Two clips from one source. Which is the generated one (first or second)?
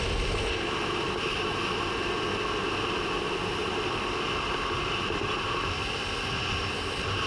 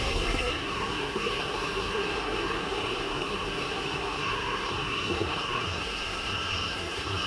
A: second